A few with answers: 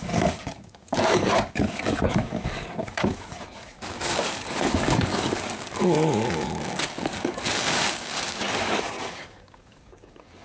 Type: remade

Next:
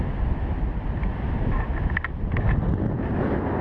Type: recorded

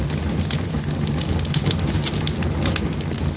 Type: recorded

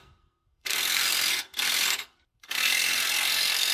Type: remade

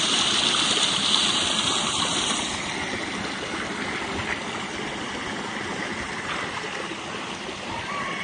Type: recorded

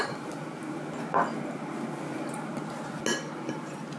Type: recorded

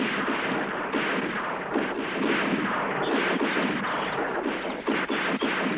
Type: recorded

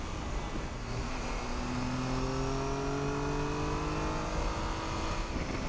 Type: recorded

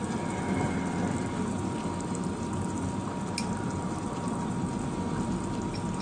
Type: recorded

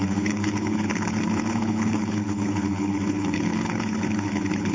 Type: remade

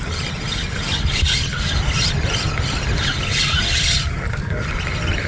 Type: recorded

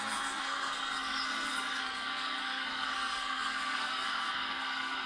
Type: remade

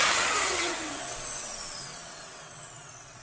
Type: remade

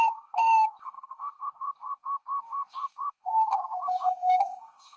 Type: remade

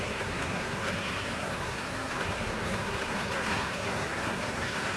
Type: remade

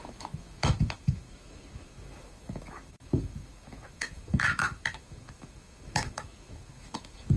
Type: remade